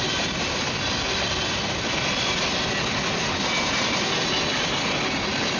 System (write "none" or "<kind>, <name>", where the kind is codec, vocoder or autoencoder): none